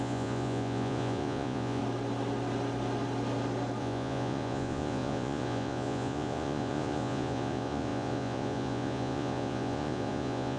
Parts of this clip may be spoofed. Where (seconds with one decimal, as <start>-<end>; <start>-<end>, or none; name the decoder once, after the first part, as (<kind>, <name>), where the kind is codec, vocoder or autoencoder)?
0.0-1.8 (vocoder, Vocos); 3.8-10.6